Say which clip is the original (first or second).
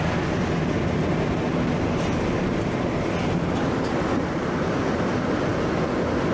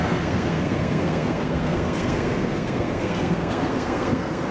first